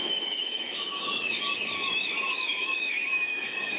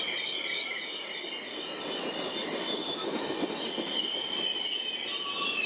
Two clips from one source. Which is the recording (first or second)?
second